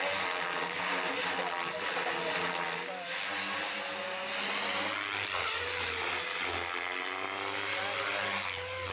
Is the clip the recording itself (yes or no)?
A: yes